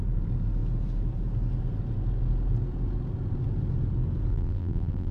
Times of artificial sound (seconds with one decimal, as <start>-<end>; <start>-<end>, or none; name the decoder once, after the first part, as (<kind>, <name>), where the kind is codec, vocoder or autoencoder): 4.3-5.1 (vocoder, BigVGAN v2)